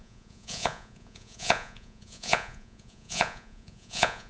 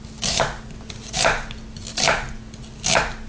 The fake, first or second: first